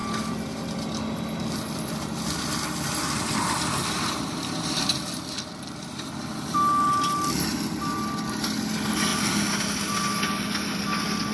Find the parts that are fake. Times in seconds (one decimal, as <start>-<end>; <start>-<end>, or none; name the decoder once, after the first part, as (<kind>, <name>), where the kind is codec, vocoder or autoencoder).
none